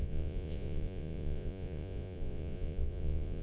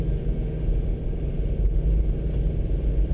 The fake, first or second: first